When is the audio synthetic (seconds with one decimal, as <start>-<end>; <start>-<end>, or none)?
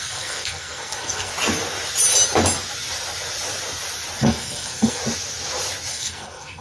0.0-1.3; 4.2-5.0; 5.9-6.6